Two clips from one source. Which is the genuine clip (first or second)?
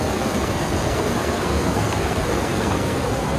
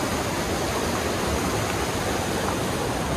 second